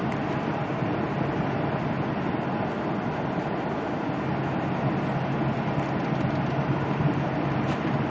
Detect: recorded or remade recorded